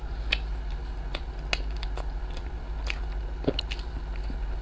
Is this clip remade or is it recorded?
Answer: recorded